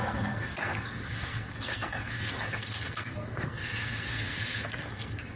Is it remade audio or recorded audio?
remade